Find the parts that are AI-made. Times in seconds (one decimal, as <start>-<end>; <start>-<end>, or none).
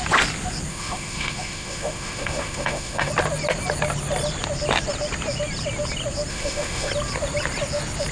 0.7-3.1; 6.3-6.9